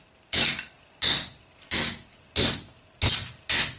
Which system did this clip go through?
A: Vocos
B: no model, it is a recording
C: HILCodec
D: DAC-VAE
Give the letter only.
B